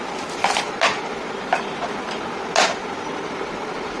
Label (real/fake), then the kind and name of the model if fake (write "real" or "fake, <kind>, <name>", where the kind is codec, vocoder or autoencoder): real